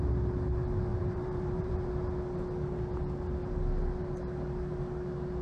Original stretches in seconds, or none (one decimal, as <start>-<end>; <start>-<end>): 0.0-0.9; 1.9-5.4